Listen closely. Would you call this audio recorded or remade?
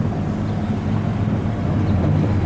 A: recorded